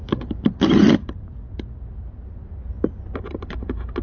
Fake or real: real